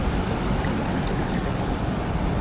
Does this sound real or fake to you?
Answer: real